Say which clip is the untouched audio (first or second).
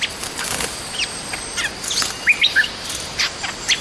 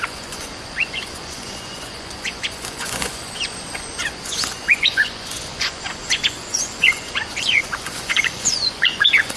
first